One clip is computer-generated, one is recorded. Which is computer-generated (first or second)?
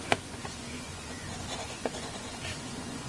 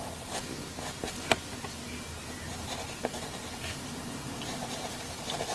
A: first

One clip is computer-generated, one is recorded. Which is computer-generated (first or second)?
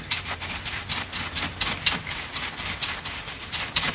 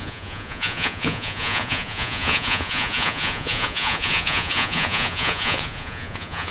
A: second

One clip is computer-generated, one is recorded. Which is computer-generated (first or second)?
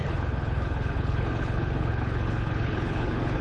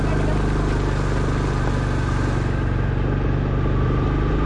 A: first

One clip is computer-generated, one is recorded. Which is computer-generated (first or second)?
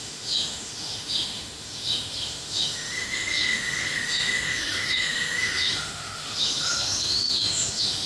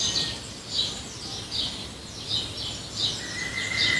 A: first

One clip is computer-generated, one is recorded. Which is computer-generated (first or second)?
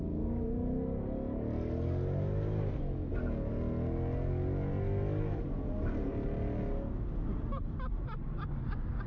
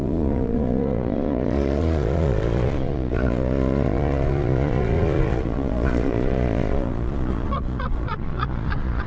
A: second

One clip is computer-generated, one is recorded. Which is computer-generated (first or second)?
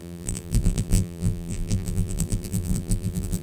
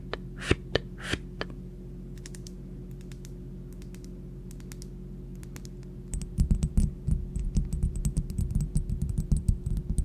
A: first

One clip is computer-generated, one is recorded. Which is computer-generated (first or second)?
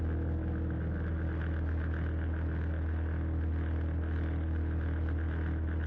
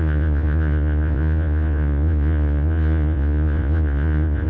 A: second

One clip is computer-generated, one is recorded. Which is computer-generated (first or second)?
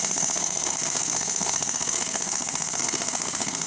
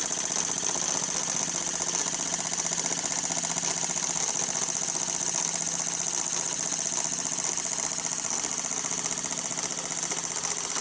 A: first